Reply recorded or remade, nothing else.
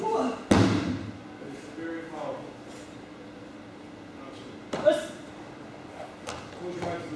recorded